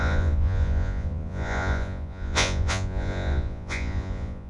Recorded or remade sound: remade